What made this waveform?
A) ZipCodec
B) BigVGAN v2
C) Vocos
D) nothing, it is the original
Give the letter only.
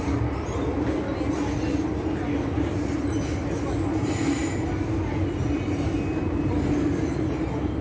D